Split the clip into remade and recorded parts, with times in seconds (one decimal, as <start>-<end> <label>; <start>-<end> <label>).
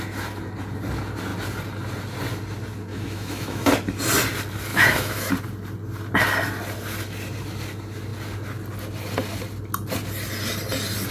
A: 0.0-2.9 recorded; 2.9-3.7 remade; 3.7-4.7 recorded; 4.7-5.3 remade; 5.3-11.1 recorded